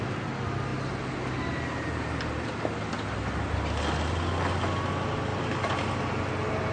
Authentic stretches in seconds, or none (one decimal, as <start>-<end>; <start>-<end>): 0.0-6.7